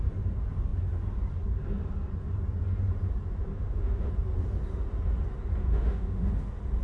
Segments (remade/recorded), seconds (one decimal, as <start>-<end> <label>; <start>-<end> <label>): 0.0-3.5 recorded; 3.5-4.1 remade; 4.1-5.6 recorded; 5.6-6.3 remade; 6.3-6.8 recorded

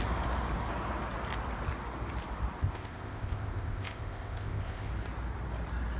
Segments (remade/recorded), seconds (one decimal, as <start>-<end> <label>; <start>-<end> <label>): 0.0-2.6 recorded; 2.6-4.9 remade; 4.9-6.0 recorded

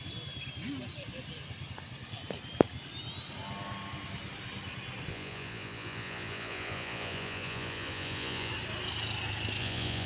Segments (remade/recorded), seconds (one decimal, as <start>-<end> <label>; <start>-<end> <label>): 0.0-5.1 recorded; 5.1-8.5 remade; 8.5-9.6 recorded; 9.6-10.1 remade